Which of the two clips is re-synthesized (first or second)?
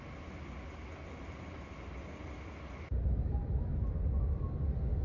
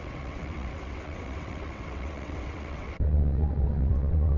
second